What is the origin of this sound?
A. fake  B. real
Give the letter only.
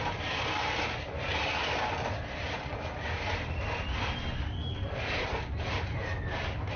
B